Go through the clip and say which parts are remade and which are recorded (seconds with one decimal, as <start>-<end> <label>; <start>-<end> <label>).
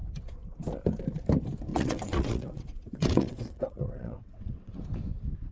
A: 0.0-1.7 recorded; 1.7-4.8 remade; 4.8-5.5 recorded